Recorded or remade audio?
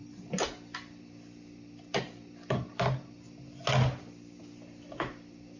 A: recorded